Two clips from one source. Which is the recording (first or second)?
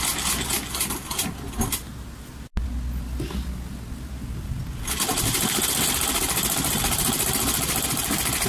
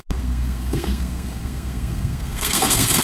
first